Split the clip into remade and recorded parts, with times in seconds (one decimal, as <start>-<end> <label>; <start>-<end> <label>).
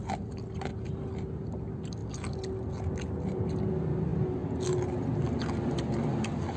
0.0-2.0 remade; 2.0-3.0 recorded; 3.0-4.1 remade; 4.1-5.4 recorded; 5.4-6.6 remade